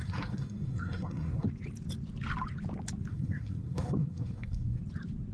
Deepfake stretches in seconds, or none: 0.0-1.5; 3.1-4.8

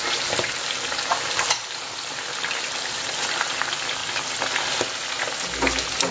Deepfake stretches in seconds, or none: 1.1-3.5